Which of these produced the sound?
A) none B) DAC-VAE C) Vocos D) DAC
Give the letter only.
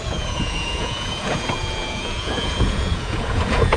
C